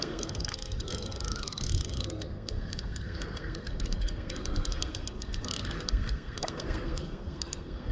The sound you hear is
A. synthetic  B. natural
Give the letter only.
A